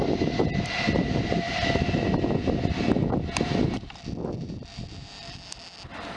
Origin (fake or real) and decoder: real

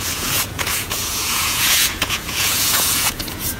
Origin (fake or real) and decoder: fake, vocoder, Vocos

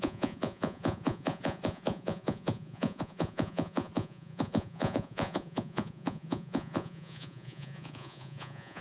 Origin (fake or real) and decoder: fake, vocoder, Vocos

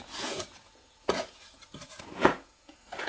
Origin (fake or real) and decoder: fake, vocoder, Vocos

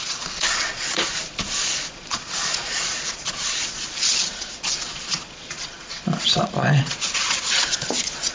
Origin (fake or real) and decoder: fake, vocoder, Vocos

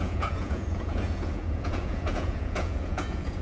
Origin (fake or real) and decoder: fake, vocoder, Vocos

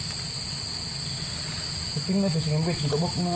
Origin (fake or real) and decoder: real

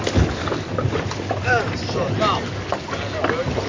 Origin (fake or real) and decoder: real